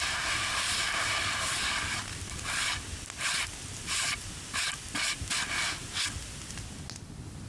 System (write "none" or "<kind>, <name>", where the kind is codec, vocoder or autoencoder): none